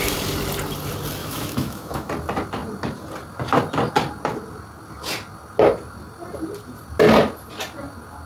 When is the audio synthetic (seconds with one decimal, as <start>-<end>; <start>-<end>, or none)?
1.2-2.1